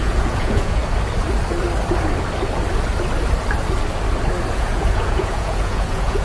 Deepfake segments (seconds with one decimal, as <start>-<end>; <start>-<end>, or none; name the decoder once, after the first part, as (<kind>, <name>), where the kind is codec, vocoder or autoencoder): 0.0-0.8 (vocoder, Vocos); 4.5-6.2